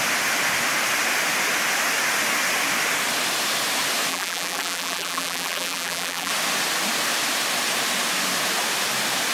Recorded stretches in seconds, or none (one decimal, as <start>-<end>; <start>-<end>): 0.0-4.1; 6.3-9.3